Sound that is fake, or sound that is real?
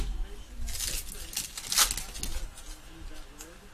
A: real